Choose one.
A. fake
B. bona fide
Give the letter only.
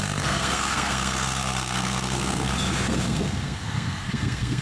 A